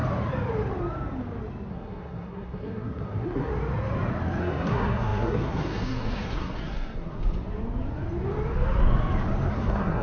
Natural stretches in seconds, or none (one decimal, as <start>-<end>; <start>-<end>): 0.0-1.7; 3.5-4.4; 7.2-9.5